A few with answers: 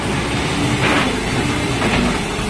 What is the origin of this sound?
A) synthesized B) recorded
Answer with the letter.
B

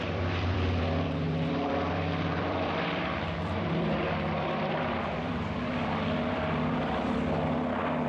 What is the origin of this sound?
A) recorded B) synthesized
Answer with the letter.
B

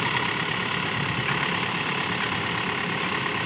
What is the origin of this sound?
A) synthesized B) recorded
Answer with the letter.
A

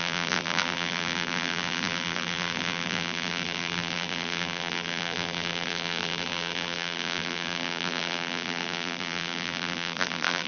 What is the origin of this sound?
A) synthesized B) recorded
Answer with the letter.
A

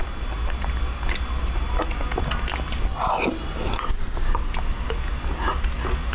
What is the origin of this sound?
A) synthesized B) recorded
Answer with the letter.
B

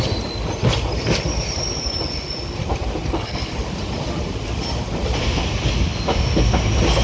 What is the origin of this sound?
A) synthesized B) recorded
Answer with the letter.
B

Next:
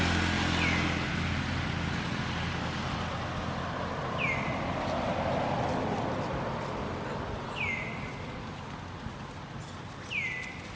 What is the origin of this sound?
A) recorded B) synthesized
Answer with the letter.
A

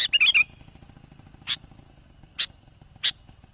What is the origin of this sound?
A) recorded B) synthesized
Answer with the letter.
A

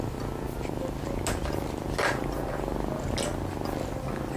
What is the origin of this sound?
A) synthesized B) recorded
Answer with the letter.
B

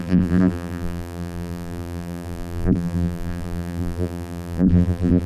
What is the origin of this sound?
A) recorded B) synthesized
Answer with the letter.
B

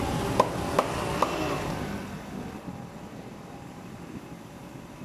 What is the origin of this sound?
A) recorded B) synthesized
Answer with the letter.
A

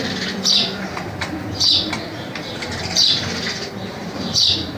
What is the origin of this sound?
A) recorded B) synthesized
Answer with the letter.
B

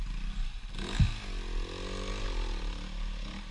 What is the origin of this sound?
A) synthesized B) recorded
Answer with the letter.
B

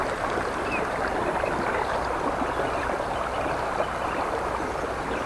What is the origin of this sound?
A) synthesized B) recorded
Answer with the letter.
B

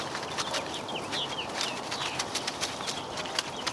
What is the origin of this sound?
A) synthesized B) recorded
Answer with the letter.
B